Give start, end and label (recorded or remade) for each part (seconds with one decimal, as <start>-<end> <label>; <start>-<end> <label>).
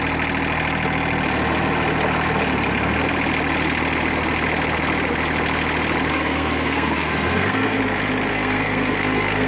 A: 0.0-6.1 recorded; 6.1-7.8 remade; 7.8-8.3 recorded; 8.3-9.5 remade